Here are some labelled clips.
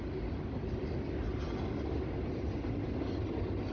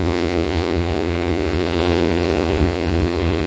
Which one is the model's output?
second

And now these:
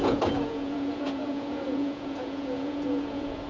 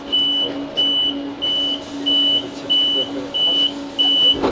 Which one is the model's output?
first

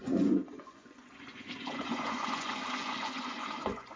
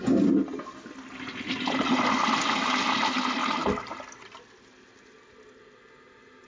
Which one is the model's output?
first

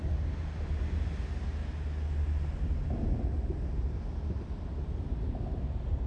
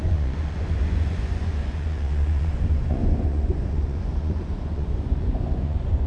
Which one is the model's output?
second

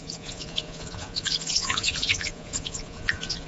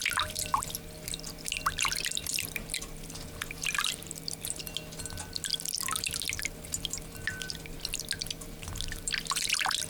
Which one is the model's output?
first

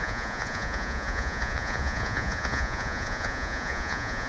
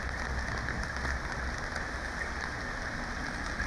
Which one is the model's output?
first